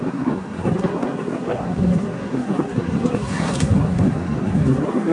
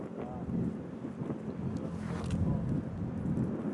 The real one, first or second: second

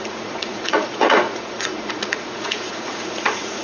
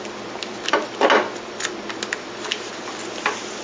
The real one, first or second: second